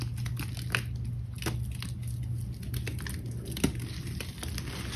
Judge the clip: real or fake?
real